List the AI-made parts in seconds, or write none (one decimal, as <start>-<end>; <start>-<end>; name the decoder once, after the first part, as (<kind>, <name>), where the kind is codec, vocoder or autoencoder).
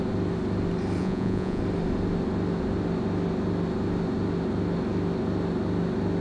1.0-1.6 (vocoder, Vocos)